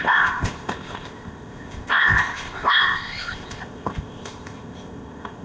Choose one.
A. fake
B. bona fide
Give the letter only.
A